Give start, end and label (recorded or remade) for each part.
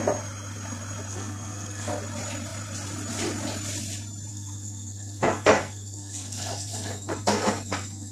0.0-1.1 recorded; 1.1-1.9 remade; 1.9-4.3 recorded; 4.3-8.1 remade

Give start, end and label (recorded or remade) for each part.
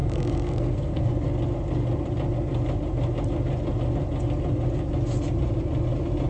0.0-1.1 remade; 1.1-6.3 recorded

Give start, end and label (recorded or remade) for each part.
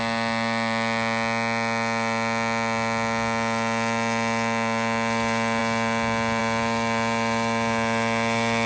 0.0-8.7 recorded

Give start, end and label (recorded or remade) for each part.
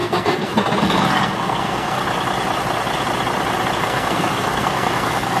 0.0-2.0 remade; 2.0-3.8 recorded; 3.8-5.4 remade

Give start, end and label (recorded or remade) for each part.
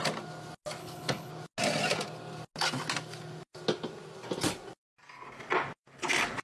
0.0-0.8 recorded; 0.8-1.3 remade; 1.3-6.4 recorded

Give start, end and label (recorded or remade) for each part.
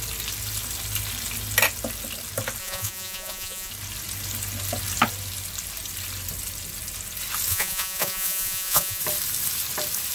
0.0-2.6 recorded; 2.6-3.7 remade; 3.7-7.5 recorded; 7.5-9.0 remade; 9.0-10.1 recorded